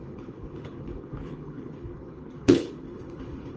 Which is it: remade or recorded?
remade